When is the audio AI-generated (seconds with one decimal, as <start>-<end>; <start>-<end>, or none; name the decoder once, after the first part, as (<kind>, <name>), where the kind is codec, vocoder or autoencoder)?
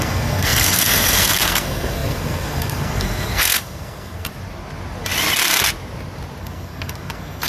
0.0-4.3 (codec, SNAC); 6.4-7.5